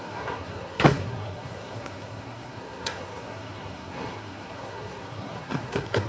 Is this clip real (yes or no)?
no